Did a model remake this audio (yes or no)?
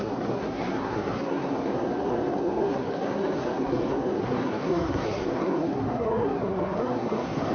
yes